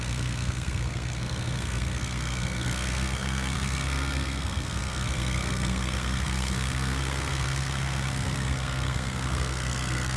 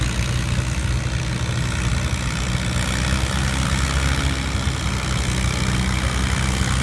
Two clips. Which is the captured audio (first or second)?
second